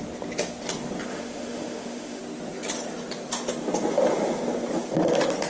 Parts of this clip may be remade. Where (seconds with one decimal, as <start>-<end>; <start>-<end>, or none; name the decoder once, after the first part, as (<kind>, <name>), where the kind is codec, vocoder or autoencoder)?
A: 1.1-2.2 (autoencoder, DAC-VAE)